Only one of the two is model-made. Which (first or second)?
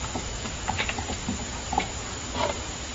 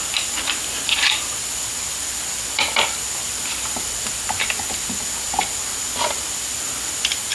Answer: first